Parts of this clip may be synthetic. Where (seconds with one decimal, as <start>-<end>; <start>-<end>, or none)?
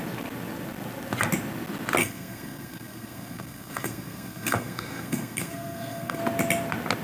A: 2.0-6.2